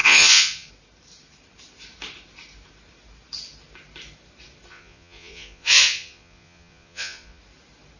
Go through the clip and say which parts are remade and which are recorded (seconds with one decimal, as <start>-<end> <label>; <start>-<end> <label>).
0.0-0.7 remade; 0.7-4.7 recorded; 4.7-7.4 remade; 7.4-8.0 recorded